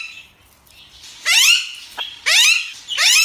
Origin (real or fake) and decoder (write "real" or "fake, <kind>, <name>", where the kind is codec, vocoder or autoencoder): real